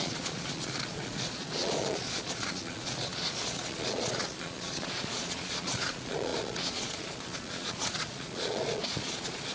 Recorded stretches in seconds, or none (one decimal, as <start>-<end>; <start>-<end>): none